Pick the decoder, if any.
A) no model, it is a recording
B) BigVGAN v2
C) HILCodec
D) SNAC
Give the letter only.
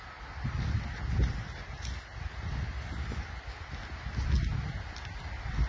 A